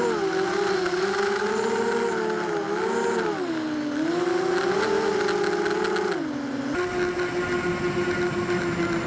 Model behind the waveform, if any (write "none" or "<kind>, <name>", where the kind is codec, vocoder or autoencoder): none